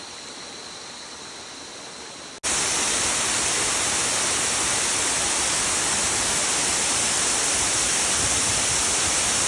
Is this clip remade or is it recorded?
recorded